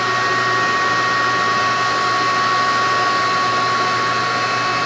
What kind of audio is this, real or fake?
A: real